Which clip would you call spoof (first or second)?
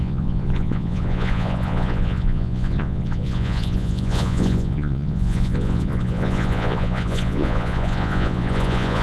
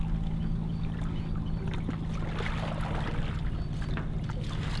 first